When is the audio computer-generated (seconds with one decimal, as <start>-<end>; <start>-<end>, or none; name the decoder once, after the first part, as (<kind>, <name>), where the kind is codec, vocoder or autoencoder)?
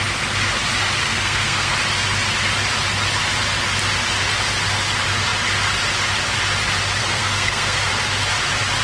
1.0-1.7 (codec, SNAC); 7.0-7.9